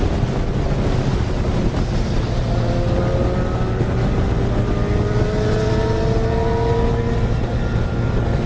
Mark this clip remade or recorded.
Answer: recorded